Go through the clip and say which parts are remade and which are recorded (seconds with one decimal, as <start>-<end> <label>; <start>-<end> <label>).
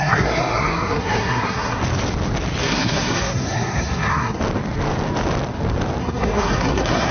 0.0-1.8 remade; 1.8-2.6 recorded; 2.6-4.4 remade; 4.4-6.0 recorded; 6.0-7.1 remade